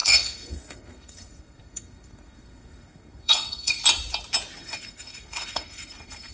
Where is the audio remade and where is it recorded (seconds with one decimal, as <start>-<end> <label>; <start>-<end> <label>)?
0.0-3.8 remade; 3.8-4.6 recorded; 4.6-6.3 remade